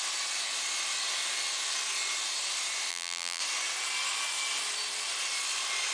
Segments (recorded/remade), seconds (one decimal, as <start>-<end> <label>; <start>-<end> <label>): 0.0-2.9 recorded; 2.9-3.4 remade; 3.4-5.9 recorded